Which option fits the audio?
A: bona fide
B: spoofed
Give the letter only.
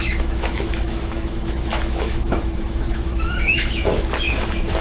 B